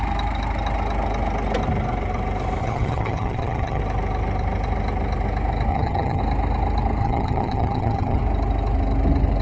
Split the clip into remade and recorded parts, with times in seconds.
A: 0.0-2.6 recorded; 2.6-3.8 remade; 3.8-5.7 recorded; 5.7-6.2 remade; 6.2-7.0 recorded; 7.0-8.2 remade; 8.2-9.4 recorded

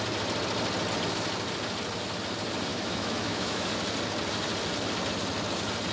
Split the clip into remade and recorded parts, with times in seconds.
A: 0.0-2.7 recorded; 2.7-3.7 remade; 3.7-5.9 recorded

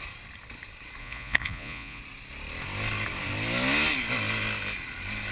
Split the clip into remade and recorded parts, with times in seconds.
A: 0.0-1.0 recorded; 1.0-2.0 remade; 2.0-5.3 recorded